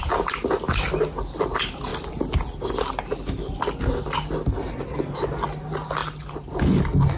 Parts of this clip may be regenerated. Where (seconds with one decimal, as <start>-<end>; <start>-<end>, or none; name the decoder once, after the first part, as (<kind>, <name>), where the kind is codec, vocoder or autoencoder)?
none